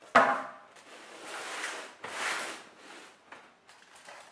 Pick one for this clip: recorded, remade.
recorded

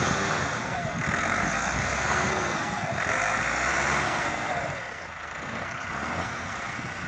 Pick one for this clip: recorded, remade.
remade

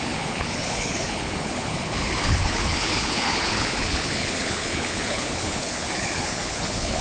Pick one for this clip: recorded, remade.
remade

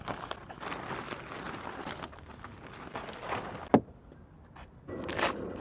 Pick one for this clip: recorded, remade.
recorded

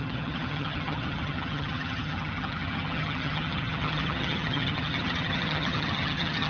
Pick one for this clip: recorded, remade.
remade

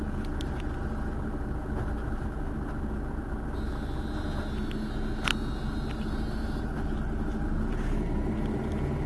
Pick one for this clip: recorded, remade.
recorded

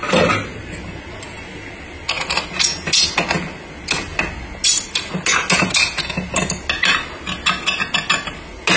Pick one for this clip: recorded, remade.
recorded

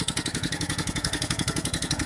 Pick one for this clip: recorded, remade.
remade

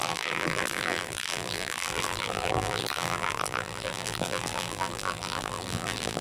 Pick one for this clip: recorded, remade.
remade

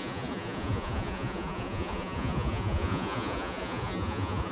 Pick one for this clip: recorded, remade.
remade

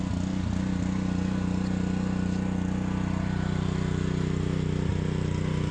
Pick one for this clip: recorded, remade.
recorded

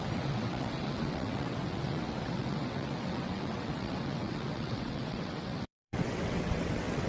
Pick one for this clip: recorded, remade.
remade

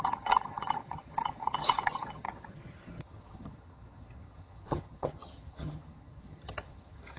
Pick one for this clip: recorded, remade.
remade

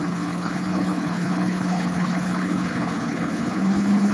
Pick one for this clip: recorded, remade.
remade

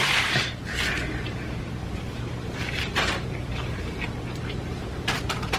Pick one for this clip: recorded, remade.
remade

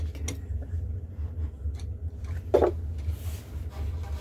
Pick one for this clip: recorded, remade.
recorded